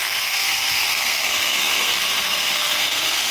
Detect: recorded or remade remade